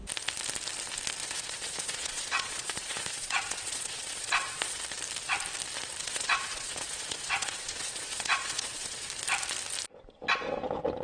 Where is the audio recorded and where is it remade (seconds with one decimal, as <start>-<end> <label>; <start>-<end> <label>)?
0.0-1.2 recorded; 1.2-4.8 remade; 4.8-6.0 recorded; 6.0-9.1 remade; 9.1-11.0 recorded